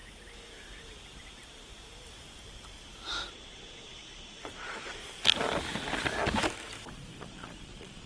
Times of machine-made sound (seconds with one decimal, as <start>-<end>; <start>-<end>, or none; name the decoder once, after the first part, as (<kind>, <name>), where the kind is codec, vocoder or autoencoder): 3.3-5.0 (vocoder, Vocos); 7.2-8.1